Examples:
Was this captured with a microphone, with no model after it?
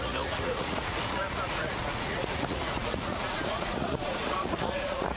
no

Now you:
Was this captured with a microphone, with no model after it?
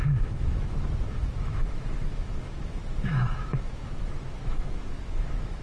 no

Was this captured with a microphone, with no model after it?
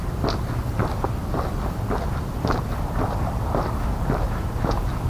yes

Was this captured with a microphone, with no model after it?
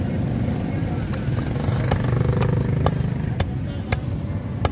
yes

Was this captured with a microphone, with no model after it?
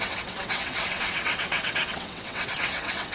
no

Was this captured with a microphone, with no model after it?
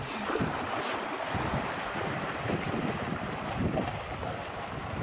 yes